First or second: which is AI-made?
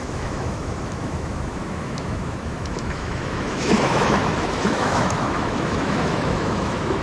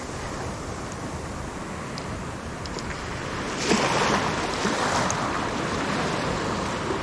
first